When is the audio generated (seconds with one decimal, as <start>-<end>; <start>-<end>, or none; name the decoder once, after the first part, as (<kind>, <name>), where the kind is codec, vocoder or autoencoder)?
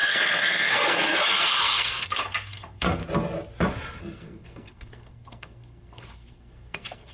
0.0-3.0 (codec, SNAC); 4.0-7.1